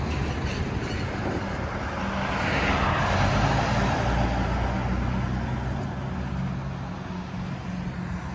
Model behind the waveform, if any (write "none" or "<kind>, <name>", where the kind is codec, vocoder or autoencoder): none